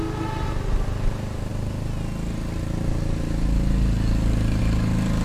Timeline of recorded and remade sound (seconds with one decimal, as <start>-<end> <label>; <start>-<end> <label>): 0.0-5.2 recorded